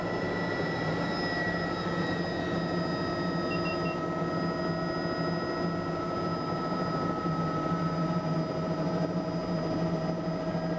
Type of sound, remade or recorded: recorded